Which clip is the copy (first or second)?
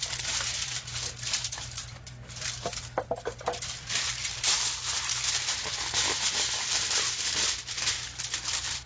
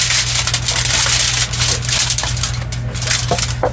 first